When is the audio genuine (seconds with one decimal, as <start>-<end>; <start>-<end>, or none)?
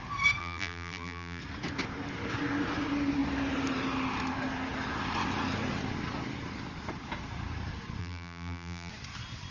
0.0-0.4; 1.4-8.0; 8.9-9.5